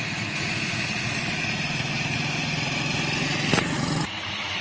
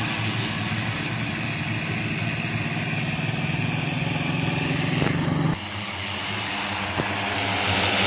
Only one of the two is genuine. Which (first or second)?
second